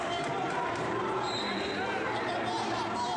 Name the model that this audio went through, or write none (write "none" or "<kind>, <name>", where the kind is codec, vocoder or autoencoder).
vocoder, BigVGAN v2